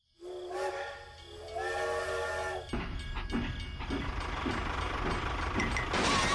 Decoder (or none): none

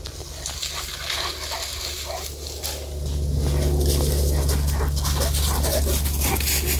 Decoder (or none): none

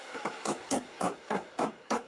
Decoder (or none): codec, SNAC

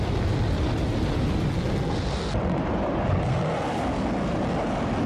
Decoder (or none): none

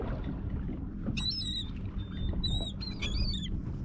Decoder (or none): none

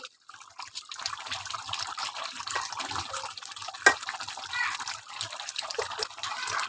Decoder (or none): vocoder, BigVGAN v2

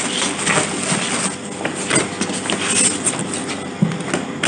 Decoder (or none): none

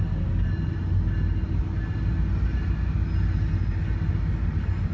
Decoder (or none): none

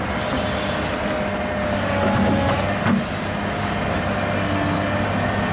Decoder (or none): none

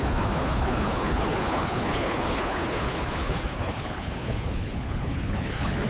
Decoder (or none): codec, HILCodec